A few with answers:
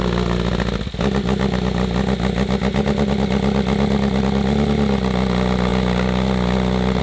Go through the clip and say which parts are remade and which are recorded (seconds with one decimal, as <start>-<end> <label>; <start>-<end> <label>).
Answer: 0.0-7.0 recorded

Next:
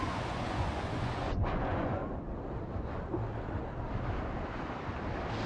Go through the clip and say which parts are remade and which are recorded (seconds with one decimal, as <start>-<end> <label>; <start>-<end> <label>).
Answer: 0.0-2.0 remade; 2.0-5.5 recorded

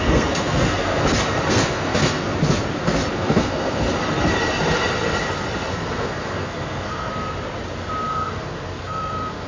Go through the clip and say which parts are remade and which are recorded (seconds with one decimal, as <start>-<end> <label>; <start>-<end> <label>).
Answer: 0.0-1.0 remade; 1.0-1.5 recorded; 1.5-2.3 remade; 2.3-3.1 recorded; 3.1-3.9 remade; 3.9-5.7 recorded; 5.7-7.1 remade; 7.1-8.1 recorded; 8.1-9.5 remade

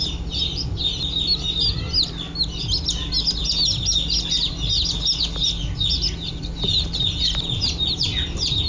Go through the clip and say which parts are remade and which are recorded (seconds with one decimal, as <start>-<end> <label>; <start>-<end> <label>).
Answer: 0.0-8.7 recorded

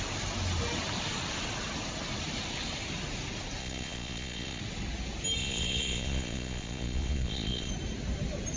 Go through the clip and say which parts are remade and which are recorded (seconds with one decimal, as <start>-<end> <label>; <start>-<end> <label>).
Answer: 0.0-3.6 recorded; 3.6-4.6 remade; 4.6-5.4 recorded; 5.4-7.7 remade; 7.7-8.6 recorded

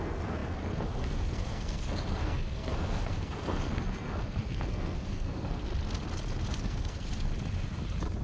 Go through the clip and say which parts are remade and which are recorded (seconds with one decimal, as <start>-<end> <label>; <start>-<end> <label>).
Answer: 0.0-5.7 remade; 5.7-6.5 recorded; 6.5-7.3 remade; 7.3-8.2 recorded

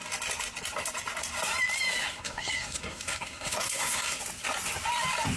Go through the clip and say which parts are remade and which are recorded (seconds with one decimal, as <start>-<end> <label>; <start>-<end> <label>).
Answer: 0.0-2.0 recorded; 2.0-4.2 remade; 4.2-5.4 recorded